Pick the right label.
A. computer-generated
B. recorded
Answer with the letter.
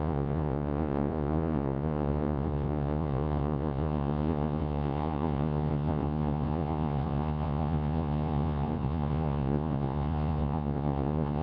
A